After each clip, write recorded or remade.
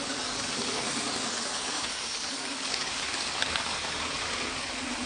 remade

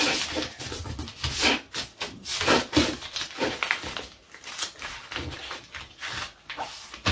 recorded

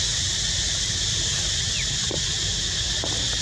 recorded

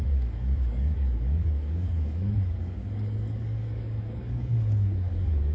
remade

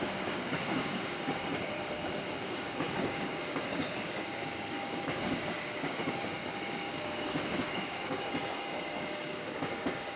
remade